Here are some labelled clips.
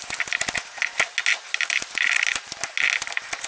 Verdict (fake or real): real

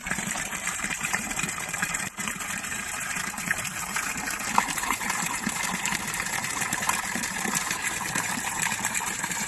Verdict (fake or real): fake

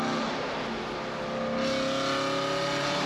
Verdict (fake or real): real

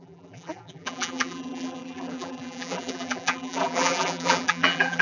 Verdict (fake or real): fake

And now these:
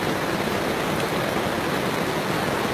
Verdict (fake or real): real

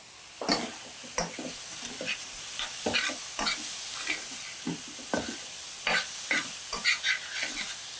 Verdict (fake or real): real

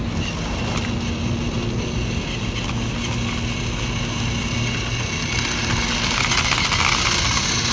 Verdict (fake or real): real